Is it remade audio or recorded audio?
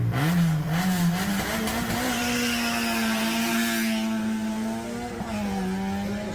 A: recorded